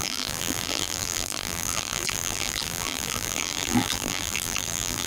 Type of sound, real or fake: fake